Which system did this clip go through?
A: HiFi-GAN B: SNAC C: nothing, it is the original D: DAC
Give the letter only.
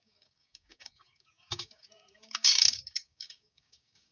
D